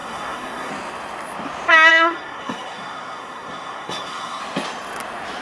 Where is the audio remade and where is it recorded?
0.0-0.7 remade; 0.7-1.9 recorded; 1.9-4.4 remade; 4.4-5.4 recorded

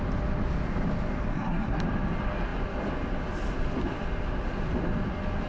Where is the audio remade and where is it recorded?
0.0-1.3 recorded; 1.3-1.8 remade; 1.8-5.5 recorded

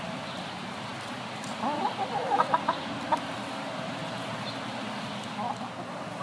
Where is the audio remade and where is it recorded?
0.0-6.2 recorded